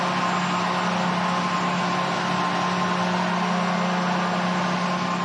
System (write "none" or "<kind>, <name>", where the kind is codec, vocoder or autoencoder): none